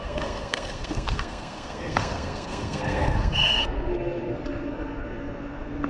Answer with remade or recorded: remade